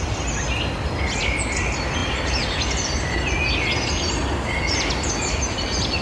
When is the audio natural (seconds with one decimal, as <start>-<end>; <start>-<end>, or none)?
0.0-6.0